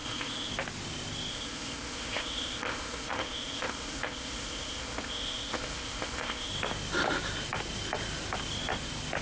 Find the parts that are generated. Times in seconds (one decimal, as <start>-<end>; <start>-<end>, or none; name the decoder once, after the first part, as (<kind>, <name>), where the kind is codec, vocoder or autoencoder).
0.0-0.5 (codec, ZipCodec); 1.3-6.5